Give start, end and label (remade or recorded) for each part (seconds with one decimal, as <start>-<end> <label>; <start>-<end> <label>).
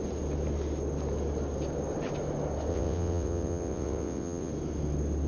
0.0-2.7 recorded; 2.7-4.5 remade; 4.5-5.3 recorded